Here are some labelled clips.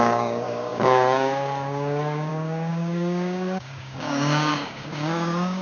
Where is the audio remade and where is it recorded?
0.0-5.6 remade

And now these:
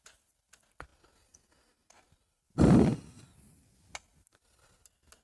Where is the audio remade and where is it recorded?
0.0-5.2 recorded

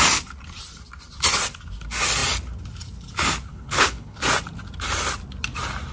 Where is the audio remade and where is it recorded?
0.0-3.5 recorded; 3.5-4.2 remade; 4.2-5.9 recorded

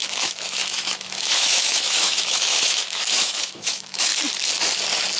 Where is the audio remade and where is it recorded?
0.0-4.1 remade; 4.1-5.2 recorded

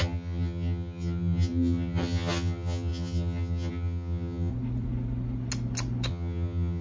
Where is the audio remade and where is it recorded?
0.0-4.5 remade; 4.5-6.1 recorded; 6.1-6.8 remade